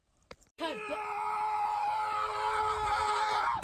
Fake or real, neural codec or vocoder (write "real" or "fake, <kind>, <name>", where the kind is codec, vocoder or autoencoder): fake, vocoder, BigVGAN v2